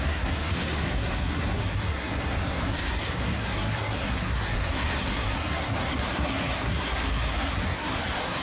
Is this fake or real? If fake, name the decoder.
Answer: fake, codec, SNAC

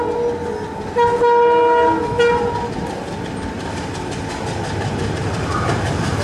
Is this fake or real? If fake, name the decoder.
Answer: real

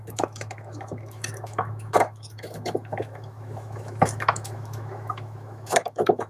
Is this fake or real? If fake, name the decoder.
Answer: fake, autoencoder, DAC-VAE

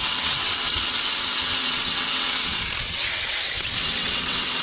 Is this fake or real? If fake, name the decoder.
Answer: fake, vocoder, WaveNeXt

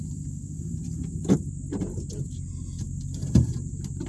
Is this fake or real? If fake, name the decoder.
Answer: real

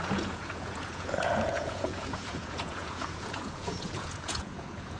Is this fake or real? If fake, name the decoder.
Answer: fake, vocoder, Vocos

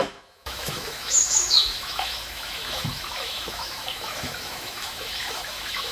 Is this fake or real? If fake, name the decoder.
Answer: fake, autoencoder, DAC-VAE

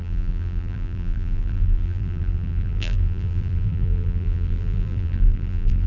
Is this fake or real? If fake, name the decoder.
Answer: fake, vocoder, BigVGAN v2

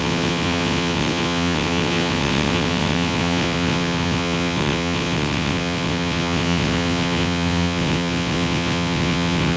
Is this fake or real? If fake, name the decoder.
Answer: fake, vocoder, WaveNeXt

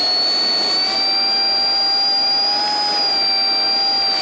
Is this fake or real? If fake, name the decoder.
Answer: real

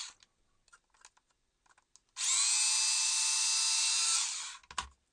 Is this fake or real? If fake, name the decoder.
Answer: real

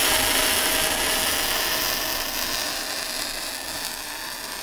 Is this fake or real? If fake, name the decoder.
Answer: real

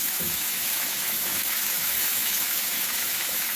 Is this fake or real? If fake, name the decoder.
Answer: fake, autoencoder, DAC-VAE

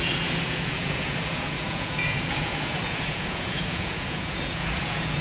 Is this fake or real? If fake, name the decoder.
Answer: fake, vocoder, Vocos